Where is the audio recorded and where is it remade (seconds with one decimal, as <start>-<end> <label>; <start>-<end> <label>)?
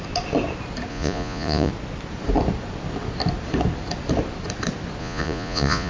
0.0-0.9 recorded; 0.9-1.7 remade; 1.7-5.0 recorded; 5.0-5.9 remade